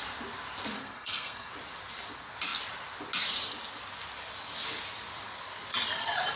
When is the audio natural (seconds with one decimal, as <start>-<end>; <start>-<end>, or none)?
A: 0.0-0.8; 1.5-6.4